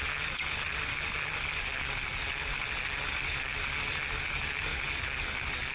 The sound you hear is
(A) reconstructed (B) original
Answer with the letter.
B